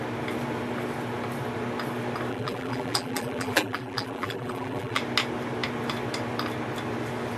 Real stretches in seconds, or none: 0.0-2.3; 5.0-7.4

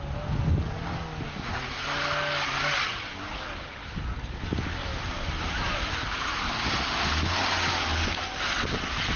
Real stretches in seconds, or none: 0.0-4.9; 6.5-9.2